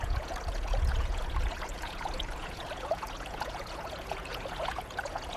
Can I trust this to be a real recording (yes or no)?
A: no